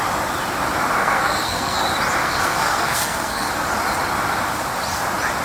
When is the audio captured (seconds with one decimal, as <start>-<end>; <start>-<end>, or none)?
0.0-1.0; 1.8-2.2; 3.5-5.4